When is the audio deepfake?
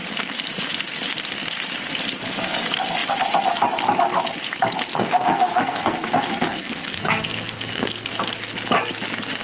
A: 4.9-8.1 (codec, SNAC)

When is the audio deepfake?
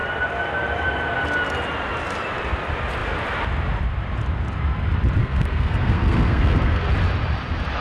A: 5.2-6.9 (codec, SNAC)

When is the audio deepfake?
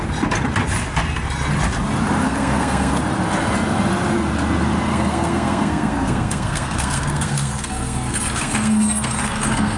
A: 2.2-3.0 (codec, SNAC); 4.9-9.8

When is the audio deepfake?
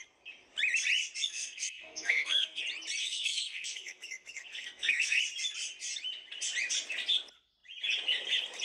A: 1.2-2.6 (codec, SNAC); 3.0-5.2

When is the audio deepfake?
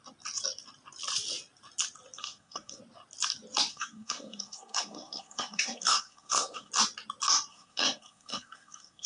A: 2.2-2.8 (codec, SNAC); 3.7-6.7; 7.5-9.1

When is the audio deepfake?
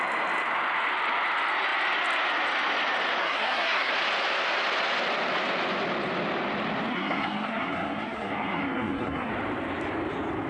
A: 3.2-3.9 (codec, SNAC); 6.9-9.3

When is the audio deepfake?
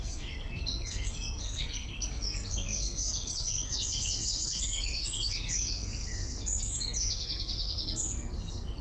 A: 0.0-8.8 (codec, SNAC)